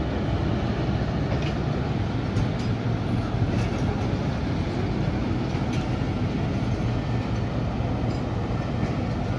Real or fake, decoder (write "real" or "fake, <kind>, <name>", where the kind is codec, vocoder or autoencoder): real